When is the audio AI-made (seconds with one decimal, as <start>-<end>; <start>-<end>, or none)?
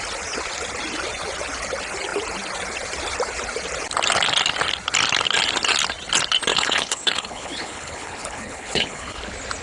6.5-9.2